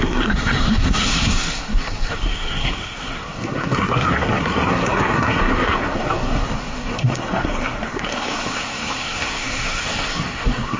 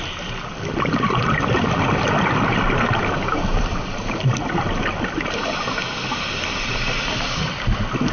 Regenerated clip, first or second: first